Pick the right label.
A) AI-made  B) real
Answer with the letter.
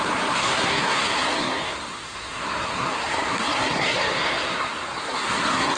A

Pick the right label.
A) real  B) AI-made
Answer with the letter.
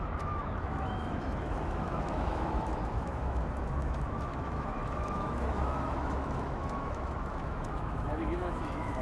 B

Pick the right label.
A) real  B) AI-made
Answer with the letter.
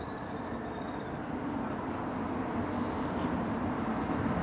A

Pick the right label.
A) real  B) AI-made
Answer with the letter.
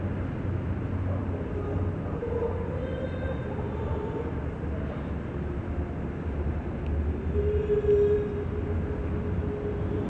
A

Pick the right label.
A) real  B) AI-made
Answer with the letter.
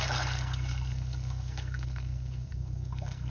B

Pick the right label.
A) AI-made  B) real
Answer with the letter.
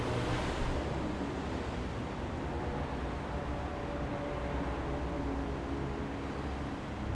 B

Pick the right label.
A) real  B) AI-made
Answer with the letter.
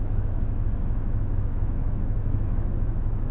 B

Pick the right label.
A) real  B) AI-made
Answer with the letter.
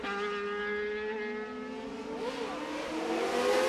A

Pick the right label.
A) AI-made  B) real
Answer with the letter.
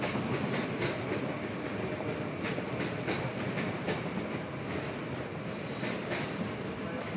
A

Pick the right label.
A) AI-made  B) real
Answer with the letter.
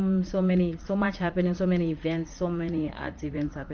A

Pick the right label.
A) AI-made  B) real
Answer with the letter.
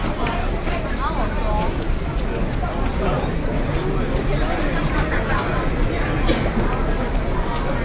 B